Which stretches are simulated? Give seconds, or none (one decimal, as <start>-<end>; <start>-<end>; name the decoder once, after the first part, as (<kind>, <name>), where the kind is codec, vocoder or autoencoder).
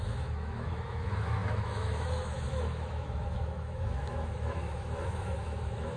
0.0-6.0 (autoencoder, DAC-VAE)